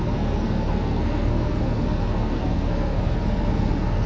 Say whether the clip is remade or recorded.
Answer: remade